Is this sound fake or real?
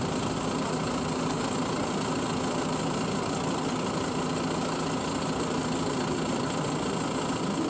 real